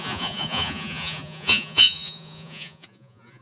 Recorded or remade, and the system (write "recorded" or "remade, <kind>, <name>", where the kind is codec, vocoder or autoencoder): remade, vocoder, Vocos